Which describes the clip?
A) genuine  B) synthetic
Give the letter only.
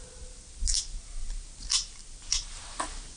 A